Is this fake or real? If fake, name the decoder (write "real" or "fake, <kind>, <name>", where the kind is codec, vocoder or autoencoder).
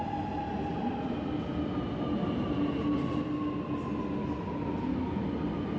real